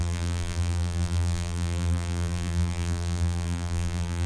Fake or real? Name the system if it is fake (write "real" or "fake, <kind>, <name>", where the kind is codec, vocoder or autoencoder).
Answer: fake, vocoder, BigVGAN v2